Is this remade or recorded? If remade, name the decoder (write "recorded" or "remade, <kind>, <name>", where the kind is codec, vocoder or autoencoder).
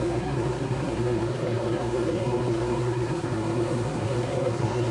remade, codec, SNAC